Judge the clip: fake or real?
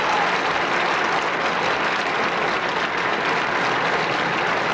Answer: real